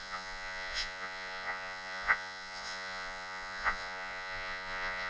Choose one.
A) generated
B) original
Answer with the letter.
A